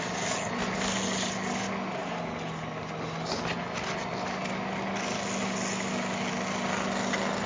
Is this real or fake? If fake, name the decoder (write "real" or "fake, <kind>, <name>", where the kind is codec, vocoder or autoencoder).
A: real